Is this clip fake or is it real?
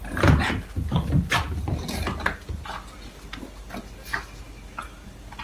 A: real